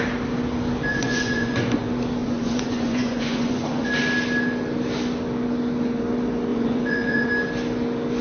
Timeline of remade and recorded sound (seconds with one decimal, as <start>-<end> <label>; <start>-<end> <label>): 0.0-0.9 recorded; 0.9-1.6 remade; 1.6-2.2 recorded; 2.2-3.9 remade; 3.9-6.5 recorded; 6.5-7.3 remade; 7.3-8.2 recorded